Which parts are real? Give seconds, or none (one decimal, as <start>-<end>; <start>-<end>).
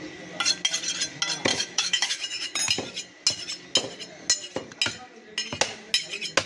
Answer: 0.0-1.5; 2.6-6.5